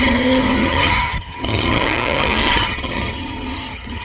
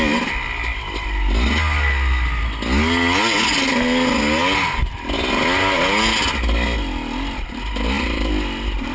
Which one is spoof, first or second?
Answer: first